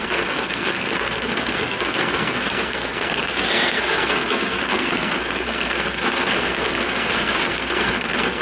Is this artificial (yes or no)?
yes